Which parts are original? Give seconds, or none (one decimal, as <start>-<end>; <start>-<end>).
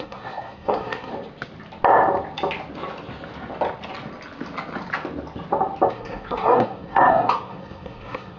1.1-5.9